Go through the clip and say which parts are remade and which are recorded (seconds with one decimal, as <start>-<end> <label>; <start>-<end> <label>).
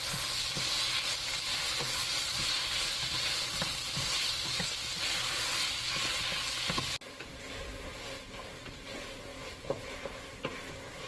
0.0-2.0 recorded; 2.0-2.8 remade; 2.8-9.3 recorded; 9.3-9.9 remade; 9.9-11.1 recorded